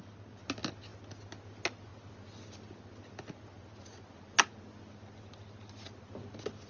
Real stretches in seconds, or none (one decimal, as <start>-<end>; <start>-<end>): 0.0-6.7